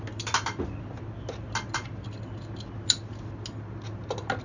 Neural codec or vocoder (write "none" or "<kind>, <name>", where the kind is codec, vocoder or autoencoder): none